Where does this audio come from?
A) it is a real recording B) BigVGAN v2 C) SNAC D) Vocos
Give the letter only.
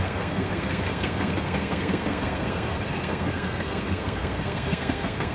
C